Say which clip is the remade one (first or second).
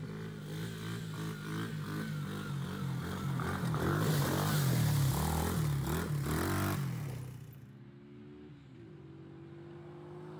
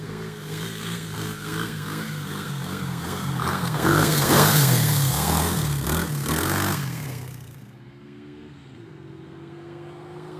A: second